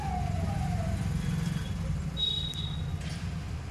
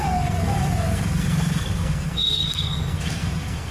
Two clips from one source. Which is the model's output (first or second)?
second